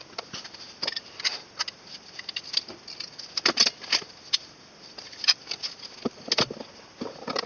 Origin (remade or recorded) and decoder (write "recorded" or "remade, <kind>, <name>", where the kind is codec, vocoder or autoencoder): recorded